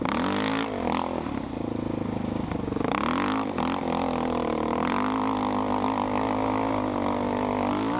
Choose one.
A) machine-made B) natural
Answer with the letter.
B